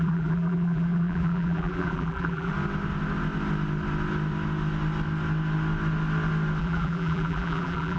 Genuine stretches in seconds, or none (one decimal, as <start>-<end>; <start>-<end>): 2.5-6.6